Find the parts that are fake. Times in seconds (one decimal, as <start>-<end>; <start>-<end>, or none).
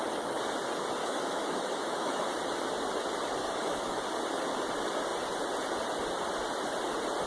1.0-2.3; 3.4-4.0